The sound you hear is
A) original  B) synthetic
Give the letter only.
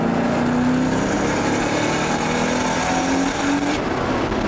A